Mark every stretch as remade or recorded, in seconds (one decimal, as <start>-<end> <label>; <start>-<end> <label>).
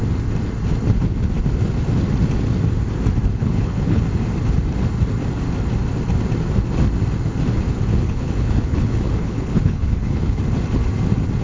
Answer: 0.0-3.3 recorded; 3.3-4.0 remade; 4.0-7.9 recorded; 7.9-10.4 remade; 10.4-11.4 recorded